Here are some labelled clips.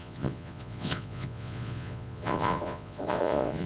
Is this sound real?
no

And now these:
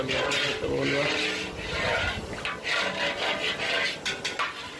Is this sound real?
yes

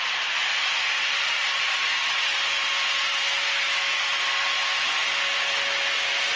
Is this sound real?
yes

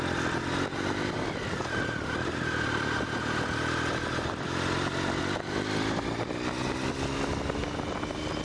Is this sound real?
yes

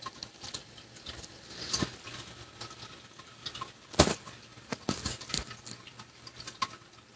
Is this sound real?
yes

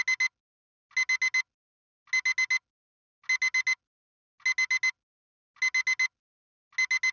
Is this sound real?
yes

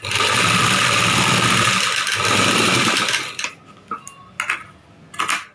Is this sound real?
yes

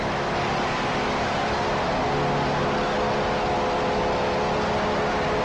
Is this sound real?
yes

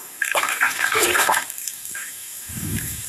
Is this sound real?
no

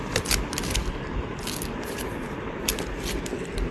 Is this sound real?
yes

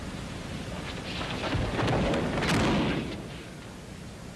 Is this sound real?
yes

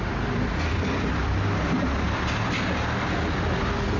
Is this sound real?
no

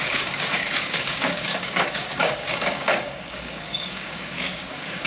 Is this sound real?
no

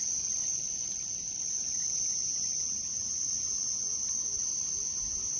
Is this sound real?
yes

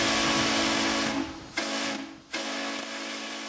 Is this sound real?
yes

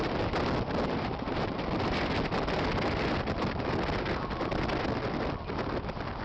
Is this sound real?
yes